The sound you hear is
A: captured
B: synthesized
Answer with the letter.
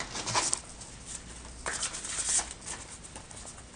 A